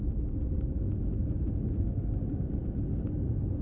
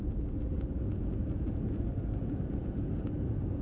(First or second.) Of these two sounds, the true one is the first